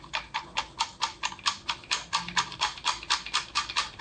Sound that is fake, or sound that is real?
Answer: real